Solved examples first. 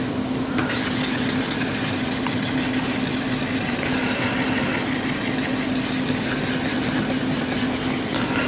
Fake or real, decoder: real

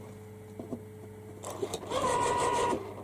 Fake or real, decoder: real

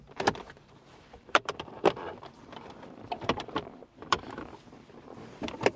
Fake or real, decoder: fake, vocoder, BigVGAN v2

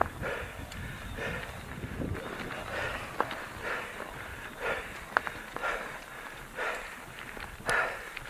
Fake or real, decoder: real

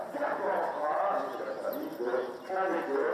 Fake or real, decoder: real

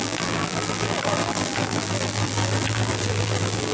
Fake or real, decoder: fake, vocoder, BigVGAN v2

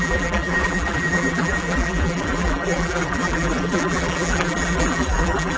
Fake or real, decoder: fake, vocoder, BigVGAN v2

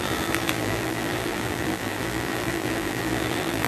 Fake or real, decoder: fake, vocoder, BigVGAN v2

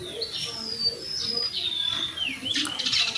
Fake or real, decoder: fake, vocoder, BigVGAN v2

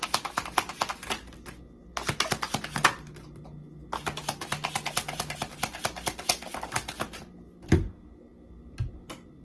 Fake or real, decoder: real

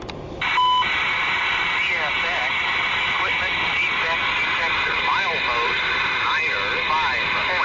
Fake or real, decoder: real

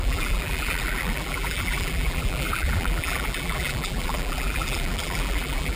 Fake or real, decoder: fake, vocoder, BigVGAN v2